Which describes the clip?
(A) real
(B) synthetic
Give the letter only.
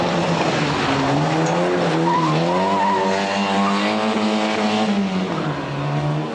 A